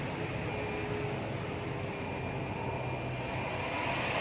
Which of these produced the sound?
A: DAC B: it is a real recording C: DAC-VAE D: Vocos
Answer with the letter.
B